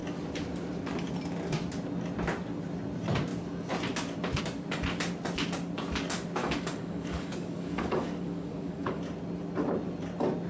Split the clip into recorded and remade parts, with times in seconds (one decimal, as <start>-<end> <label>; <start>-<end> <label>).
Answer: 0.0-6.4 recorded; 6.4-9.0 remade; 9.0-10.5 recorded